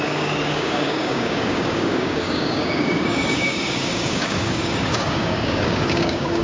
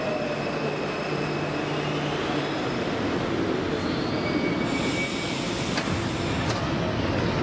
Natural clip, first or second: second